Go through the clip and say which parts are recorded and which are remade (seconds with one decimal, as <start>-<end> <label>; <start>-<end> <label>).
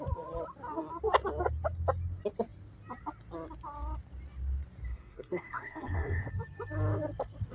0.0-4.9 recorded; 4.9-6.3 remade; 6.3-7.5 recorded